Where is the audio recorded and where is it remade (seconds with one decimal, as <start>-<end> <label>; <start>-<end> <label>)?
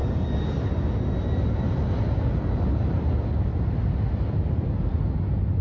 0.0-3.5 recorded; 3.5-4.1 remade; 4.1-5.6 recorded